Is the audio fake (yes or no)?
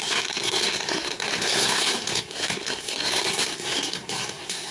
yes